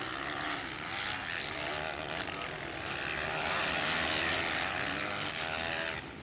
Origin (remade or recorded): recorded